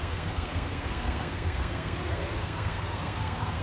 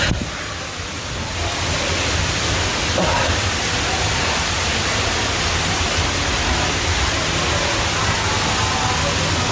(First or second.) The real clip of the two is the second